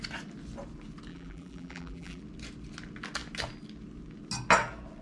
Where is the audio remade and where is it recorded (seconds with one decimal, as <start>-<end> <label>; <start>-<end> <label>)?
0.0-1.1 recorded; 1.1-2.2 remade; 2.2-5.0 recorded